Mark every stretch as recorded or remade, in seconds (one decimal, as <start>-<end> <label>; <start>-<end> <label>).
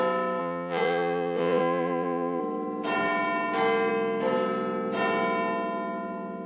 0.0-0.4 recorded; 0.4-2.4 remade; 2.4-6.5 recorded